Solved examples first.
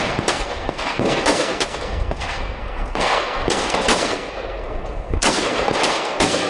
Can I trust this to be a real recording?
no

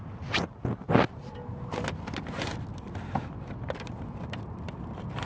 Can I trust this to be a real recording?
yes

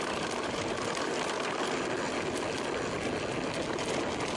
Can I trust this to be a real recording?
yes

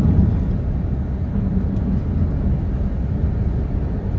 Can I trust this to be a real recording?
yes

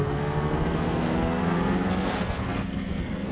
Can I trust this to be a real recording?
no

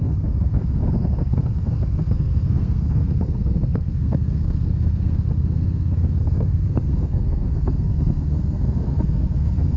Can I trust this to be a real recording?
no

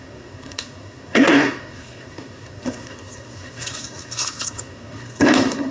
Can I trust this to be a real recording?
no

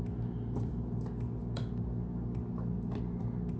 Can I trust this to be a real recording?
yes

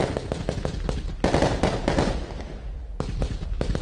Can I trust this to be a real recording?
yes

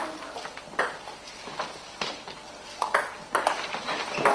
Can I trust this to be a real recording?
yes